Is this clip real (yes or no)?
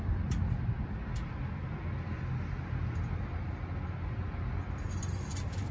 yes